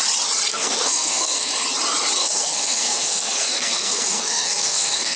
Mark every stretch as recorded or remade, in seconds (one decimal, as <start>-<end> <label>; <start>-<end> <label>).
0.0-0.5 recorded; 0.5-1.5 remade; 1.5-2.2 recorded; 2.2-5.2 remade